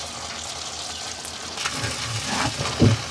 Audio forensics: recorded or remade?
recorded